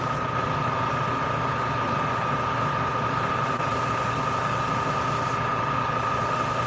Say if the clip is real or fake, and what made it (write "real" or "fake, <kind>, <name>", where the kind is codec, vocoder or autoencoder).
real